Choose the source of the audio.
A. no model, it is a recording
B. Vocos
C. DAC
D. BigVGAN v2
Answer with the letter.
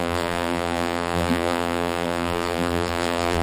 D